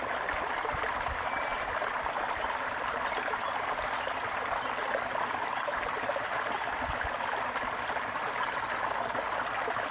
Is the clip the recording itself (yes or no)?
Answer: yes